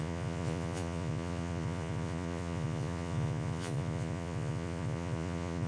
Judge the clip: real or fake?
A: fake